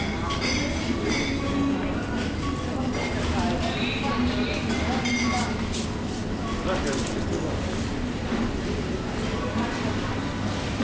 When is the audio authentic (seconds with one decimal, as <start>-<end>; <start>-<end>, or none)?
0.0-10.8